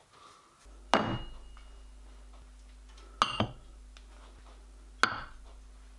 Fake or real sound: real